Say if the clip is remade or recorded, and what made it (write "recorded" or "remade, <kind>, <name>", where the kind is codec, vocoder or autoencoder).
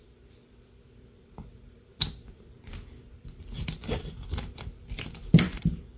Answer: remade, vocoder, BigVGAN v2